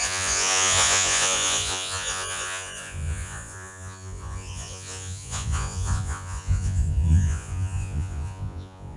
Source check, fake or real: fake